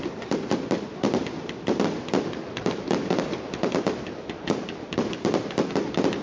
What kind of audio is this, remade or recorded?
recorded